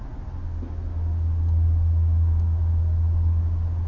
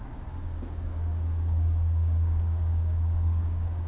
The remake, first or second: second